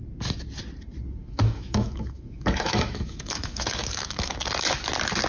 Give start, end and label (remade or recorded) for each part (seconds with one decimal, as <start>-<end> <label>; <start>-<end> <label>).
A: 0.0-1.2 recorded; 1.2-4.4 remade; 4.4-5.3 recorded